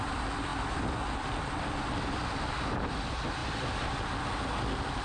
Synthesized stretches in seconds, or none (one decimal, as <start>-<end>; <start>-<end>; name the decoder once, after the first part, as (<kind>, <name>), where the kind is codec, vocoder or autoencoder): none